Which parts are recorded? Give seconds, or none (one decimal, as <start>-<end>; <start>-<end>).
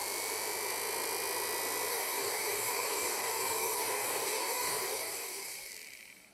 0.0-1.9; 5.7-6.3